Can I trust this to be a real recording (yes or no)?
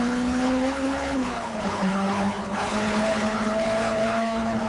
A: no